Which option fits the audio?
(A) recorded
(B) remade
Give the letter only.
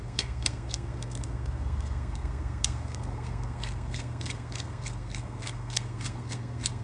B